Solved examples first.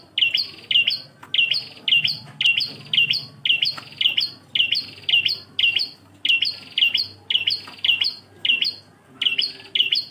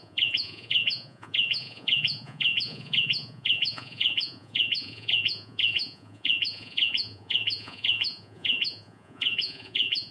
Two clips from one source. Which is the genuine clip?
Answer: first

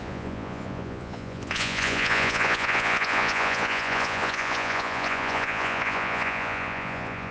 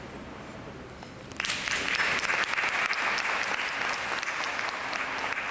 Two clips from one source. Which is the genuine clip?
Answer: second